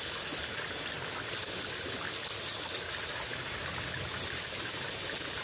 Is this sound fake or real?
real